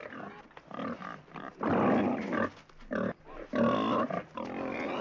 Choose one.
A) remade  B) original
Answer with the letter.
B